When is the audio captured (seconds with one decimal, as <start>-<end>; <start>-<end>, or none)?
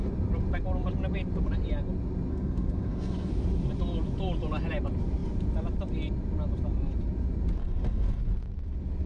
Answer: 0.0-2.3; 3.3-7.6; 8.2-9.1